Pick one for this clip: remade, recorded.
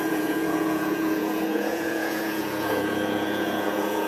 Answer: remade